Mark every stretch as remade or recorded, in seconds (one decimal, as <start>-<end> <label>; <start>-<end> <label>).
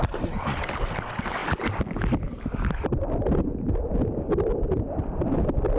0.0-5.8 recorded